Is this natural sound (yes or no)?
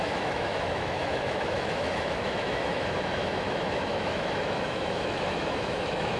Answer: no